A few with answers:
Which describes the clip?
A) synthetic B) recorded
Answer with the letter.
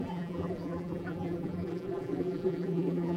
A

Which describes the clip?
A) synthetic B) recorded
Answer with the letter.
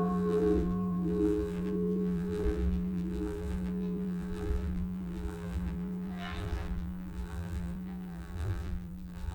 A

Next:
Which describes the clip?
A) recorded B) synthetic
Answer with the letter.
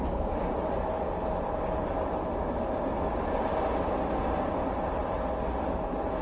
A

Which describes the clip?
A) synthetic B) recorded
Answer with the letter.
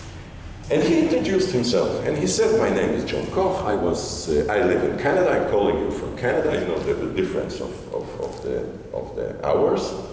A